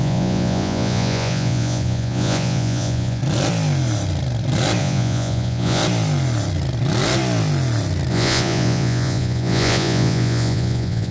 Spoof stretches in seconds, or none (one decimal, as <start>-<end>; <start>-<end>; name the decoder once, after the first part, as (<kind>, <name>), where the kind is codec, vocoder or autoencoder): 0.0-3.2 (vocoder, Vocos); 4.8-5.8; 8.1-11.1